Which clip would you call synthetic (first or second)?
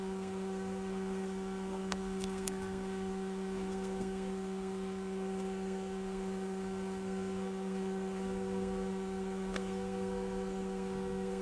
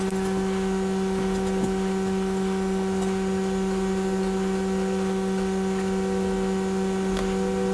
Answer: first